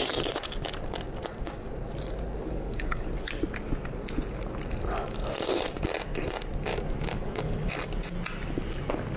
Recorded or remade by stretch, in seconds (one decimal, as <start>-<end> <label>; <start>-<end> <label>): 0.0-2.4 recorded; 2.4-3.1 remade; 3.1-6.7 recorded; 6.7-7.7 remade; 7.7-9.2 recorded